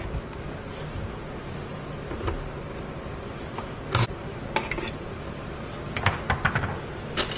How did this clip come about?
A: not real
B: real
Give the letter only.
B